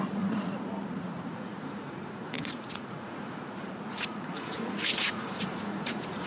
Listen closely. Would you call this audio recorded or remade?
remade